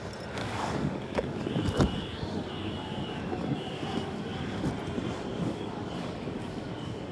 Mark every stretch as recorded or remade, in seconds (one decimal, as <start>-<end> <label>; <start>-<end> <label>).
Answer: 0.0-0.4 recorded; 0.4-4.7 remade; 4.7-5.3 recorded; 5.3-7.1 remade